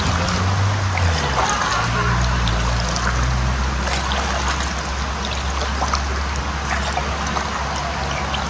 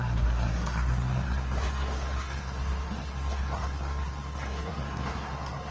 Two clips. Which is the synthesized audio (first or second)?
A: second